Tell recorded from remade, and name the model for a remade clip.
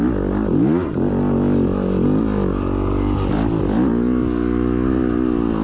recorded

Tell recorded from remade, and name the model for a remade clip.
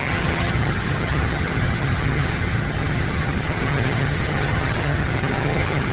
remade, vocoder, HiFi-GAN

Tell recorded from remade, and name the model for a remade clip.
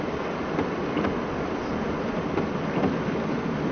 recorded